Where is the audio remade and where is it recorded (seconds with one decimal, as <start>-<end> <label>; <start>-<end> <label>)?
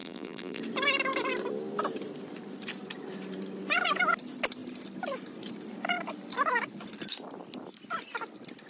0.0-0.6 remade; 0.6-8.7 recorded